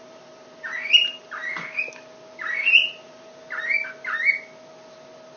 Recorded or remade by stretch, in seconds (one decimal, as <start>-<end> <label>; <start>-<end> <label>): 0.0-1.4 remade; 1.4-2.5 recorded; 2.5-3.3 remade; 3.3-5.4 recorded